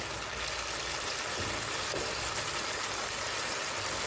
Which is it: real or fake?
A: real